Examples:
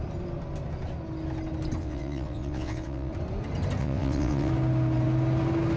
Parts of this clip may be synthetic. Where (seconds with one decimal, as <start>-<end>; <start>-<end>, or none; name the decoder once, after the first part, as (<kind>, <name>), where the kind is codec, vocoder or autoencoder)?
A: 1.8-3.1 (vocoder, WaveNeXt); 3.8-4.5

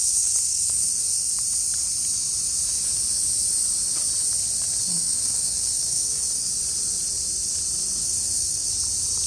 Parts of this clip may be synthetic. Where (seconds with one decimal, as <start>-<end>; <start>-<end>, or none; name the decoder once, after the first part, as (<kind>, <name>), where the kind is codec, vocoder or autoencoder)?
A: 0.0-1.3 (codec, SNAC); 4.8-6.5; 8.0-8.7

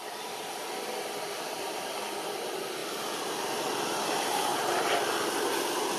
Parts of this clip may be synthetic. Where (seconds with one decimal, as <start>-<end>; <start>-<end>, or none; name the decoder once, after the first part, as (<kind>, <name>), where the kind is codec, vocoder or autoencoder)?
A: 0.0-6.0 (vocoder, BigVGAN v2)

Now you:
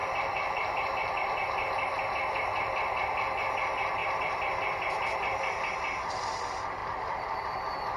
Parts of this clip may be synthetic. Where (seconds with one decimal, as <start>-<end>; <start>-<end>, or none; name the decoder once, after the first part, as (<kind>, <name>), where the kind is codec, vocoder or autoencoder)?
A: 0.0-2.0 (vocoder, BigVGAN v2); 6.8-7.3

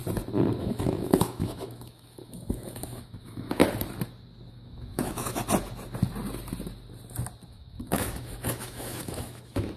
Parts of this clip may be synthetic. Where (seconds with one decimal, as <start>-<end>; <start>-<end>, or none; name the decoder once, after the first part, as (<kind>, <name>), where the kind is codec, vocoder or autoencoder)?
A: 0.6-3.6 (autoencoder, DAC-VAE); 4.5-5.4; 7.5-9.8